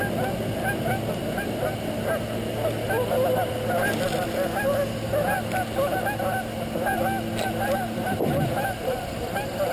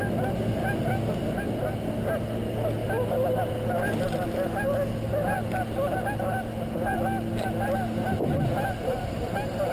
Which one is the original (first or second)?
second